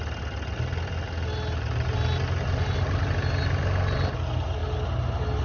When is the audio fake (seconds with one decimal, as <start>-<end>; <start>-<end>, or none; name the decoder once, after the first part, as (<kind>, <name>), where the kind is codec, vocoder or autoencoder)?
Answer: none